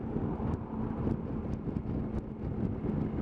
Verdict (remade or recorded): recorded